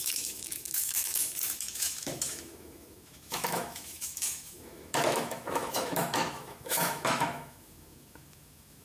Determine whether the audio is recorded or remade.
remade